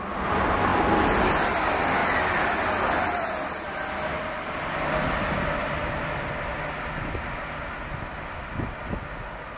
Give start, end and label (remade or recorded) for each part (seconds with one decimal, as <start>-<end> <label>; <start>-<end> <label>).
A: 0.0-0.7 recorded; 0.7-1.3 remade; 1.3-9.6 recorded